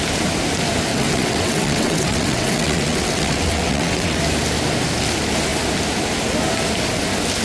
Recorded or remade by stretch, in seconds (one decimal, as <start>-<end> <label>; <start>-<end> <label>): 0.0-0.9 recorded; 0.9-4.2 remade; 4.2-7.4 recorded